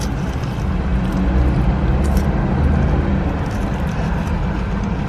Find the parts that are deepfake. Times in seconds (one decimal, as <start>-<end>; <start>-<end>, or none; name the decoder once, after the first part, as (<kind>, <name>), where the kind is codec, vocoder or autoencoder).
none